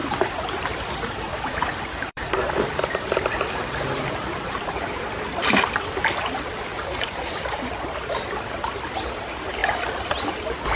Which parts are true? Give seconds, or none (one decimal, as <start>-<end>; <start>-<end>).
4.1-6.7; 7.7-9.6; 10.3-10.8